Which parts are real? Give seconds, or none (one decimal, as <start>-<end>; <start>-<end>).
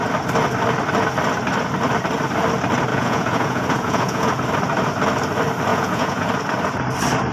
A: 0.0-2.9; 4.3-5.7; 6.3-7.3